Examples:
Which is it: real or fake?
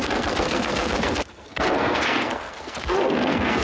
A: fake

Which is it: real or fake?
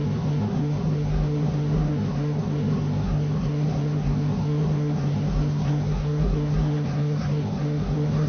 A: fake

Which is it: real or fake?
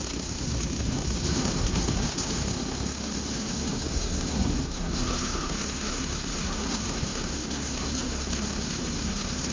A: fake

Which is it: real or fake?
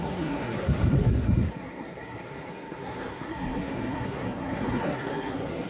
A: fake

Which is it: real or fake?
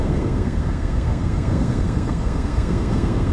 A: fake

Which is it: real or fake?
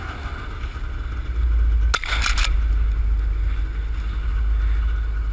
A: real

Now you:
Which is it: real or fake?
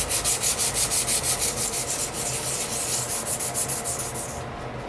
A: real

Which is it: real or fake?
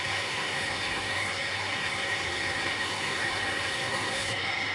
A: fake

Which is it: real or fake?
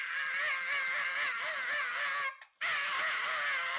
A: real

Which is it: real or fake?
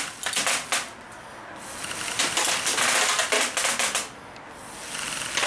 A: real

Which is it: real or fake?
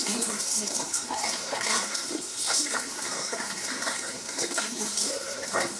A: fake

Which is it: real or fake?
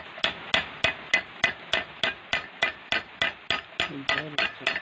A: real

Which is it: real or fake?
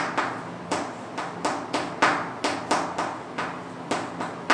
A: real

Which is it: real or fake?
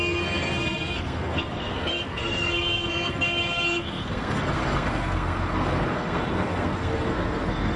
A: fake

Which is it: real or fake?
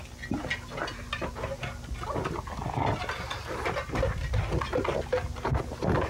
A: real